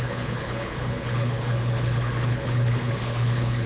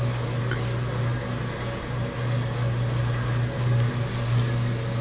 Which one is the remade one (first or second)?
first